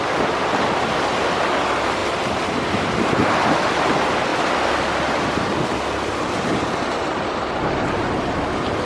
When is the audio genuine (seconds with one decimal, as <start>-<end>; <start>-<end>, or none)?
0.0-8.9